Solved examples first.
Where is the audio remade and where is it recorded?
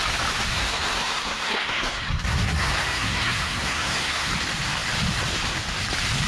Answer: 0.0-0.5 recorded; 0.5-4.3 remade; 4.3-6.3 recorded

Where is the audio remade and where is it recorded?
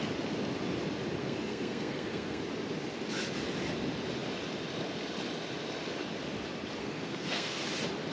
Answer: 0.0-1.2 recorded; 1.2-2.4 remade; 2.4-6.8 recorded; 6.8-7.6 remade; 7.6-8.1 recorded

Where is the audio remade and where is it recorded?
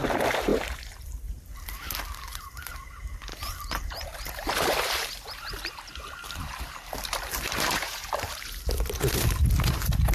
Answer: 0.0-0.5 recorded; 0.5-1.2 remade; 1.2-3.3 recorded; 3.3-8.3 remade; 8.3-10.1 recorded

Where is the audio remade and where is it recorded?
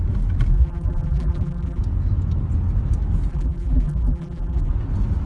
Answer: 0.0-0.5 recorded; 0.5-1.8 remade; 1.8-3.3 recorded; 3.3-4.7 remade; 4.7-5.3 recorded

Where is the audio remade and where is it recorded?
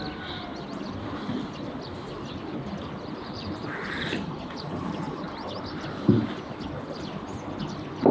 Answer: 0.0-3.6 recorded; 3.6-5.3 remade; 5.3-8.1 recorded